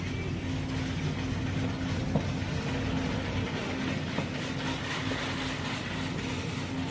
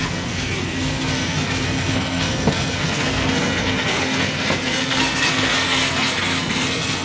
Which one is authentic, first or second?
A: first